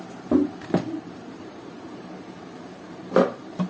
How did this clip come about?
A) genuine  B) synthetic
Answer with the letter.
B